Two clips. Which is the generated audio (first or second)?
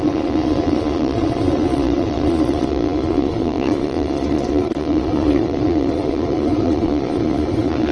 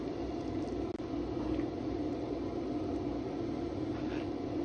first